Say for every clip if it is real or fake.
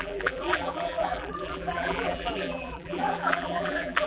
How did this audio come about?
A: fake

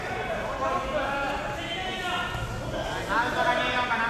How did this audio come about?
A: real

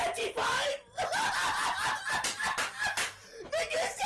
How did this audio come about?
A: fake